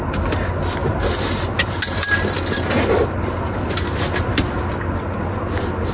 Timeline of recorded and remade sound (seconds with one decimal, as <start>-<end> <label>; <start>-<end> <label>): 0.0-5.9 recorded